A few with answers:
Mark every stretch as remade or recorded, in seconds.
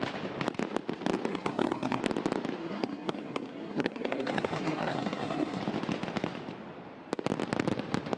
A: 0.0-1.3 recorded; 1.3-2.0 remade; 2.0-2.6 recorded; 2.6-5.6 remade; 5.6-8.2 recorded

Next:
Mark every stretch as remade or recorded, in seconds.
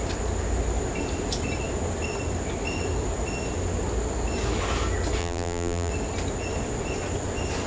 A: 0.0-5.2 recorded; 5.2-5.9 remade; 5.9-7.7 recorded